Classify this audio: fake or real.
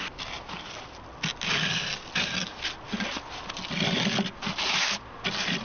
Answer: real